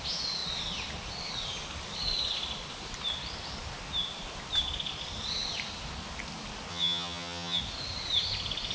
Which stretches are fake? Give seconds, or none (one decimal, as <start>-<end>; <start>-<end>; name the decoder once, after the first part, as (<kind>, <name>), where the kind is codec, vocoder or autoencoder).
6.7-7.6 (vocoder, HiFi-GAN)